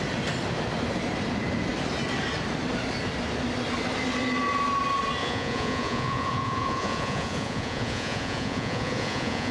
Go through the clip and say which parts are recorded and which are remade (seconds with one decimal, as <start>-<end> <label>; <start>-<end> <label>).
0.0-5.2 recorded; 5.2-9.5 remade